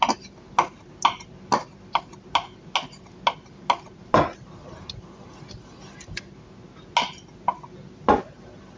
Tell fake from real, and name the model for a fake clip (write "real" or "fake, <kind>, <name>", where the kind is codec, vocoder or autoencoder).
real